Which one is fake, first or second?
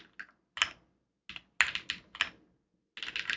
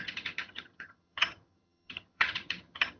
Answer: second